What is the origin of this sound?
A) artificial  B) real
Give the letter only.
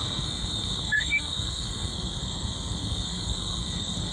A